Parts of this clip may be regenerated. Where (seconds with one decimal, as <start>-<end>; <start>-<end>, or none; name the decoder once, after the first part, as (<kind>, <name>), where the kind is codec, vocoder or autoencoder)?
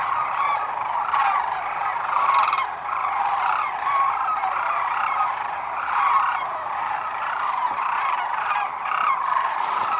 0.0-1.2 (vocoder, BigVGAN v2); 1.8-10.0